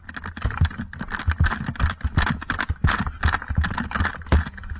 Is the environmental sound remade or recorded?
recorded